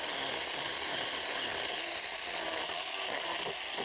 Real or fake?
real